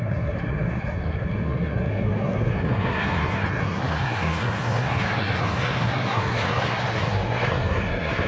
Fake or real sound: fake